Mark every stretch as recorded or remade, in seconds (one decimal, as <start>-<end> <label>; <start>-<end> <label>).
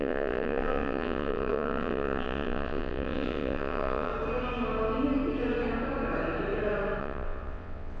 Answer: 0.0-4.1 remade; 4.1-7.0 recorded; 7.0-8.0 remade